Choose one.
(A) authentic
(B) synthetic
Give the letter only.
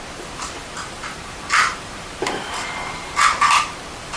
B